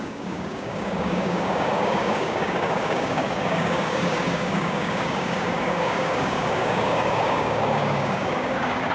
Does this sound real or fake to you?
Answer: fake